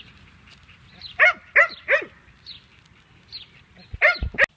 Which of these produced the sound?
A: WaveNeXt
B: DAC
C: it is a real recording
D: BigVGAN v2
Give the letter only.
C